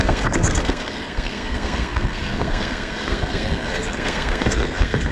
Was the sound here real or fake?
fake